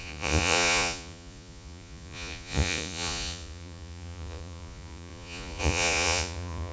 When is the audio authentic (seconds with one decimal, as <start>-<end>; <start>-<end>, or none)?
none